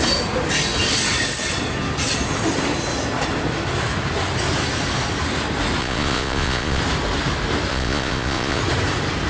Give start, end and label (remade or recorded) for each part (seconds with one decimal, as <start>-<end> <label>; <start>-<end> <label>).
0.0-5.8 recorded; 5.8-6.8 remade; 6.8-7.7 recorded; 7.7-8.6 remade; 8.6-9.3 recorded